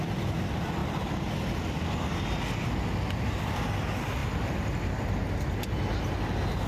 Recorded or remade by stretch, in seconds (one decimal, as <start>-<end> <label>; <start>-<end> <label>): 0.0-6.7 recorded